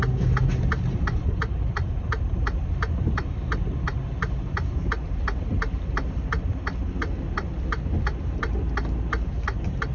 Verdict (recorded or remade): recorded